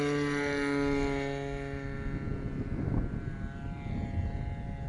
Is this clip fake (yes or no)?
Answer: no